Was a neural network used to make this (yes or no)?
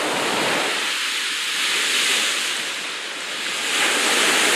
no